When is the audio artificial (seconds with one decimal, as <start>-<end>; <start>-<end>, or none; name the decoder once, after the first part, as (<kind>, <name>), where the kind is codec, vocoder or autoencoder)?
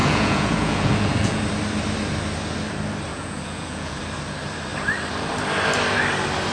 0.0-1.4 (vocoder, Vocos); 3.1-4.0